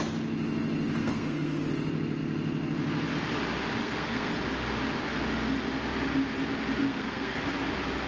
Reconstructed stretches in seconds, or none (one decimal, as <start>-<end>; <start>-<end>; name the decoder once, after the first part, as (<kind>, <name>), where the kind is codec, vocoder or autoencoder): 1.0-1.7 (codec, SNAC); 3.8-4.3; 6.8-7.4